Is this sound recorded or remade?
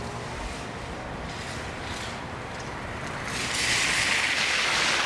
recorded